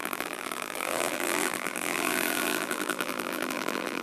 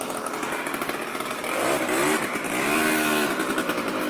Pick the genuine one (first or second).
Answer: second